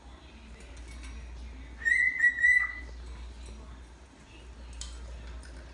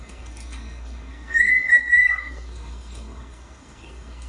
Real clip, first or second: first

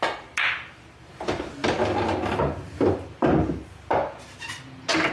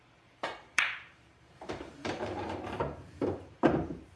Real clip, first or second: first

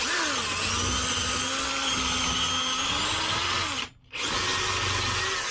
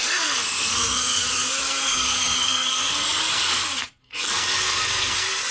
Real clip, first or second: first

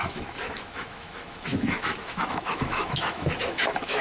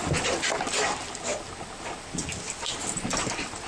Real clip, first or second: second